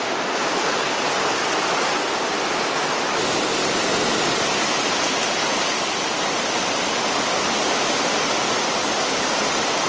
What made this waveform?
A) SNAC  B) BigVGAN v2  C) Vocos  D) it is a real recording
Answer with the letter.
D